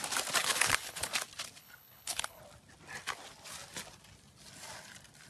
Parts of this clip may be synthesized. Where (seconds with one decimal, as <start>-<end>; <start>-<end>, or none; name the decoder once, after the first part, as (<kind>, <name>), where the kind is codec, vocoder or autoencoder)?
0.4-1.1 (codec, HILCodec); 1.6-2.4